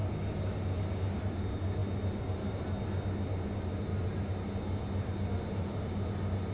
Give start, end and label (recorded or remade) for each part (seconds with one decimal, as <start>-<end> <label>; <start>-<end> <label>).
0.0-6.5 recorded